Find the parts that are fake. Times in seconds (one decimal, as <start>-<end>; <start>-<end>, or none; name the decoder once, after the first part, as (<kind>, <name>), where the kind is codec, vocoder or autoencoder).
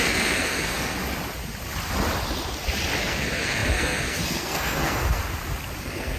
0.0-1.0 (codec, SNAC); 3.0-5.2; 5.8-6.2